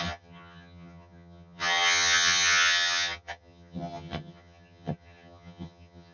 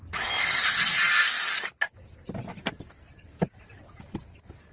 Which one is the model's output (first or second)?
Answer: first